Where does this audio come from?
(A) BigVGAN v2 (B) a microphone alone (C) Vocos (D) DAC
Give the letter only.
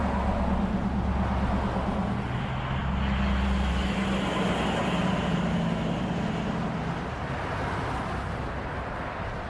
B